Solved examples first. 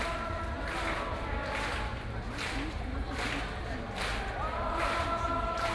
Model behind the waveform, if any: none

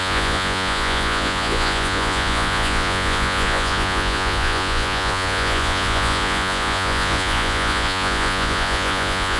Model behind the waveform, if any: vocoder, Vocos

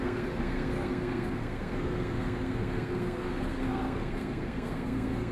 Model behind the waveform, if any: codec, SNAC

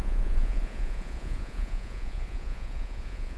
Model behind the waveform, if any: vocoder, Vocos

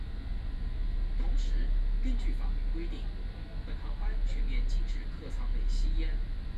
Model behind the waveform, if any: none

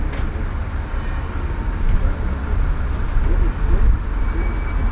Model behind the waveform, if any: none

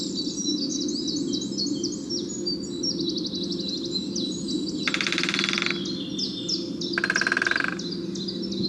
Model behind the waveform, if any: none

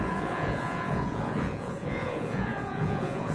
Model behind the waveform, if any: vocoder, Vocos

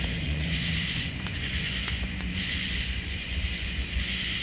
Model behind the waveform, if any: vocoder, Vocos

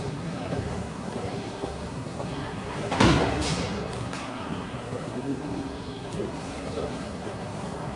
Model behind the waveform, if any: codec, SNAC